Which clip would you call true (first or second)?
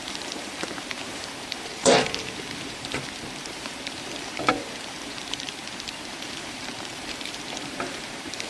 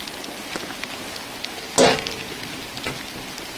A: second